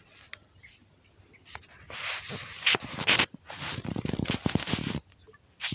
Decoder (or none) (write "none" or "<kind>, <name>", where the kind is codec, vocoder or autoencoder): none